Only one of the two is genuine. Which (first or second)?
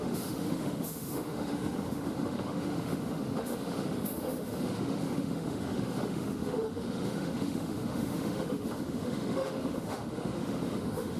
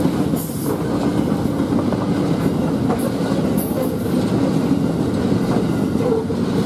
second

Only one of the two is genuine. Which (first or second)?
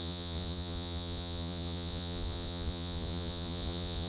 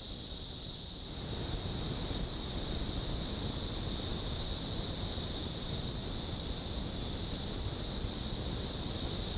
second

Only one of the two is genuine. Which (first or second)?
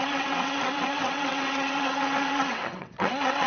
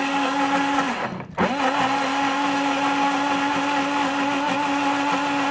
second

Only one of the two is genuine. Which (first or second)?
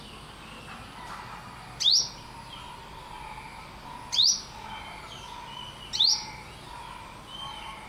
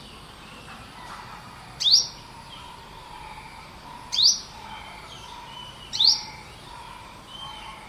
first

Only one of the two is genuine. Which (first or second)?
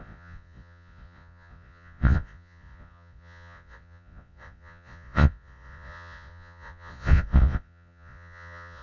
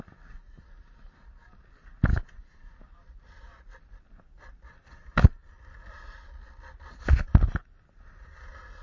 second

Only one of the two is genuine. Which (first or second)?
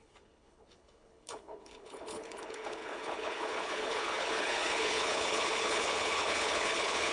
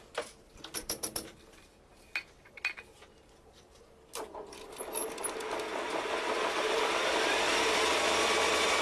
second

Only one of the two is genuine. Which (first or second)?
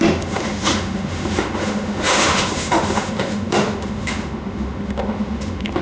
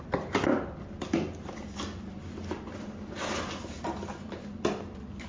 second